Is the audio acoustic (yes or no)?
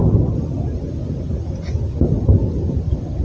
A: no